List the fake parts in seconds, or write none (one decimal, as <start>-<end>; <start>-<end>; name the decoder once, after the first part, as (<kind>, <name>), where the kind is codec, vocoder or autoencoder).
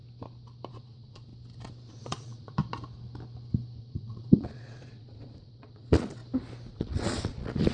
0.7-1.3 (vocoder, Vocos); 1.9-2.6; 3.8-6.2; 6.7-7.7